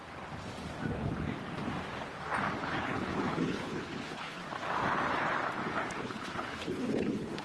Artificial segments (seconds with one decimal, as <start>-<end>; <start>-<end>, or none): 2.6-4.4; 6.0-7.4